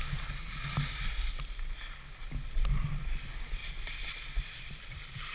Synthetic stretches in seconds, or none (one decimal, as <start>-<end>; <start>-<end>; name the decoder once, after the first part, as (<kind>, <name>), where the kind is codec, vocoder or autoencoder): none